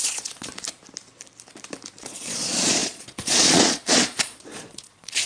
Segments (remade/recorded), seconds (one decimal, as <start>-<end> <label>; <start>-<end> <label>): 0.0-0.5 remade; 0.5-2.0 recorded; 2.0-5.3 remade